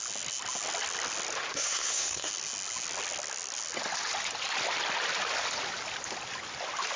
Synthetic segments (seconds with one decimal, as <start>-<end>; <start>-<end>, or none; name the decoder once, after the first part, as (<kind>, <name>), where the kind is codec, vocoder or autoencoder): 1.5-2.3 (codec, SNAC)